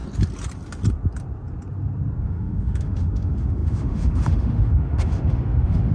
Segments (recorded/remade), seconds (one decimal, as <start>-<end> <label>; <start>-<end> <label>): 0.0-2.2 recorded; 2.2-5.9 remade